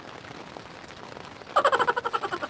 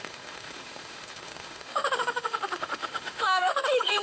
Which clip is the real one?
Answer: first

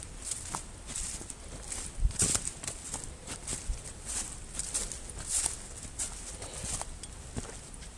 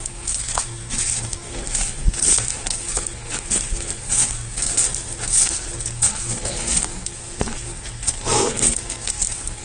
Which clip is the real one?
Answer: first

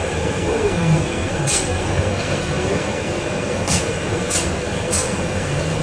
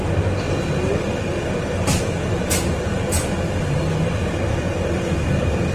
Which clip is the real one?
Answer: second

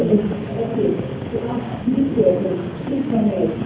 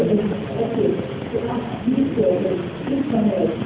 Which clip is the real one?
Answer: second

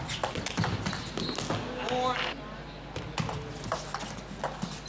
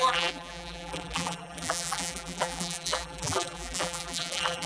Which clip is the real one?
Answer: first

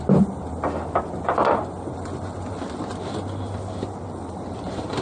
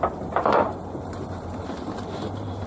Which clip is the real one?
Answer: first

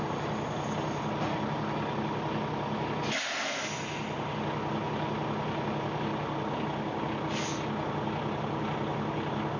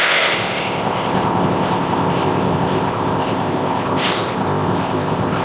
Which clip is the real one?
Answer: first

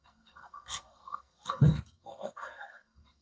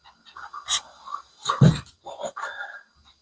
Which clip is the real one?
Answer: second